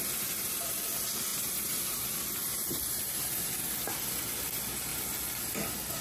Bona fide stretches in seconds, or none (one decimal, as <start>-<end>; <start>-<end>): 0.0-1.3; 3.4-6.0